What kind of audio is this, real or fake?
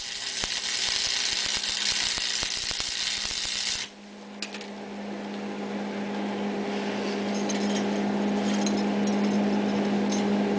real